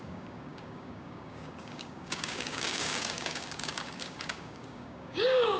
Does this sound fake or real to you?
fake